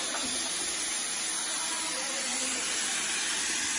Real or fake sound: real